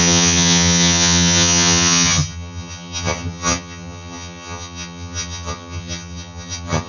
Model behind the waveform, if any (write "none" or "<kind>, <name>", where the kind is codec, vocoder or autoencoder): vocoder, HiFi-GAN